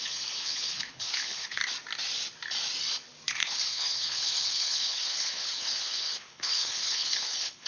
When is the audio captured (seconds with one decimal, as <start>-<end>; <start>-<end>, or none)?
1.6-3.3